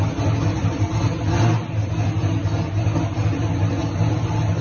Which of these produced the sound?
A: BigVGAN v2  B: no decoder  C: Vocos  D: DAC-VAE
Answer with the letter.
B